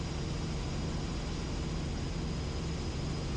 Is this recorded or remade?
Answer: recorded